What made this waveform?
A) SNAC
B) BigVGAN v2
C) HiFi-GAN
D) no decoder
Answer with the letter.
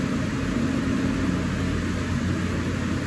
D